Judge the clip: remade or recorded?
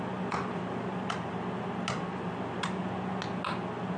recorded